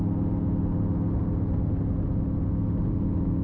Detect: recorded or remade recorded